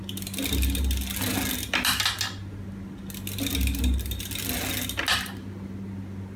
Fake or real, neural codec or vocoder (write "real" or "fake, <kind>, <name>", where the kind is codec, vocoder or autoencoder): real